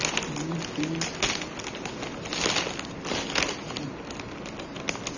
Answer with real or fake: real